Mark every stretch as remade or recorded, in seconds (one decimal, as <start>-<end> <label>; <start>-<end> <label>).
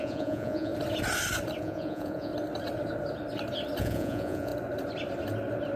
0.0-0.7 remade; 0.7-1.6 recorded; 1.6-2.3 remade; 2.3-3.8 recorded; 3.8-4.5 remade; 4.5-5.8 recorded